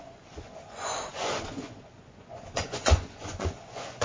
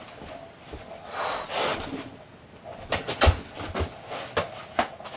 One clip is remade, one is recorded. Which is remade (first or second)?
first